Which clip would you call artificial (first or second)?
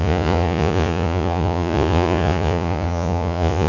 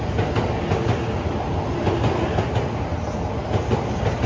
first